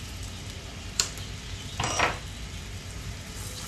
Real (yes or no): yes